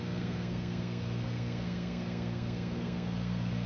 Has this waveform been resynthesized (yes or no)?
yes